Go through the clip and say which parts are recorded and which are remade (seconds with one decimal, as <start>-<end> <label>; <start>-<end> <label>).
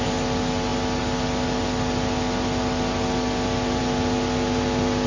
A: 0.0-5.1 recorded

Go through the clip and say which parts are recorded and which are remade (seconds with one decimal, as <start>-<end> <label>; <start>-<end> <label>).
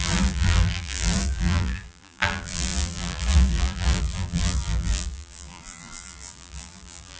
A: 0.0-7.2 remade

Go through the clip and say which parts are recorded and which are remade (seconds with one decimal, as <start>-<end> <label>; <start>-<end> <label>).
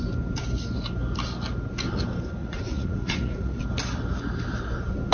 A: 0.0-2.4 recorded; 2.4-3.6 remade; 3.6-5.1 recorded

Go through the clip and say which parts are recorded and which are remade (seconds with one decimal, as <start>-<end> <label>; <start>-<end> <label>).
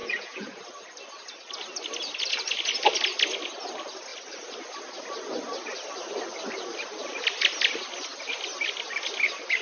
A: 0.0-0.6 remade; 0.6-9.6 recorded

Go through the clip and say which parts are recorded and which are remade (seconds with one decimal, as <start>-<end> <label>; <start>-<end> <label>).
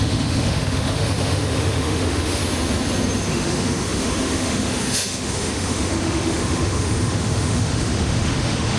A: 0.0-2.4 remade; 2.4-3.3 recorded; 3.3-8.8 remade